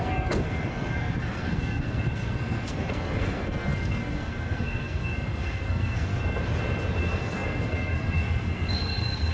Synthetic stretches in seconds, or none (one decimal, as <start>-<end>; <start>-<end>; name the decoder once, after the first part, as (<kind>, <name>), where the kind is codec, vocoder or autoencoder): 0.0-6.1 (codec, SNAC); 7.0-9.3